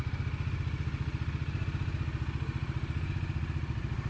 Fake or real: real